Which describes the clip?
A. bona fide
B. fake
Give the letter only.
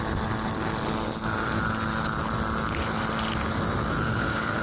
A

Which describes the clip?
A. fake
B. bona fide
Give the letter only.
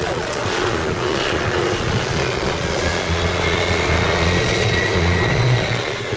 A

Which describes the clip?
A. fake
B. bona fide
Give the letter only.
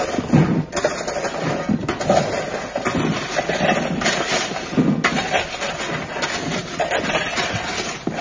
B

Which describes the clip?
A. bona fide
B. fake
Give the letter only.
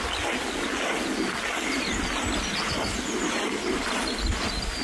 A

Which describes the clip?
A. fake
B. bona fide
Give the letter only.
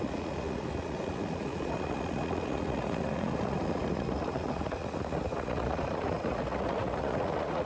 A